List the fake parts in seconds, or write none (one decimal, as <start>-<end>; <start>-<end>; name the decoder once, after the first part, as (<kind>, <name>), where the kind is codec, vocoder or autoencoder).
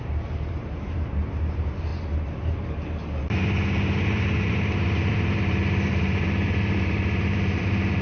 0.0-1.9 (vocoder, BigVGAN v2); 3.2-8.0